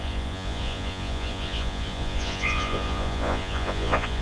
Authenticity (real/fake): fake